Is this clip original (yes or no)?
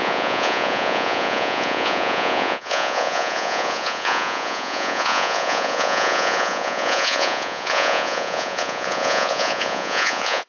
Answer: no